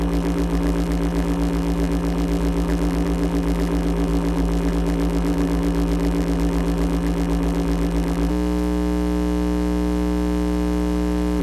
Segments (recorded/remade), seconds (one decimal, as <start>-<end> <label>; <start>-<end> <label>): 0.0-8.3 remade; 8.3-11.4 recorded